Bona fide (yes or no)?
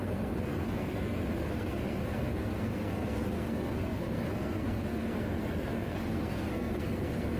no